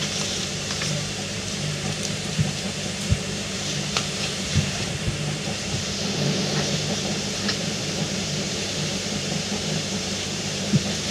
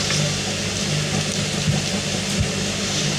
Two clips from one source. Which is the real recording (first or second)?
second